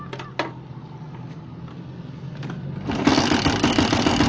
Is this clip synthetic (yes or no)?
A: no